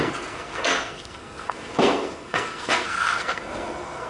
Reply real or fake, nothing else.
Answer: fake